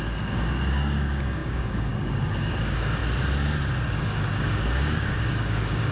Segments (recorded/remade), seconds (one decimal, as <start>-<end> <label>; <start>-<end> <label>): 0.0-3.0 remade; 3.0-3.9 recorded; 3.9-5.9 remade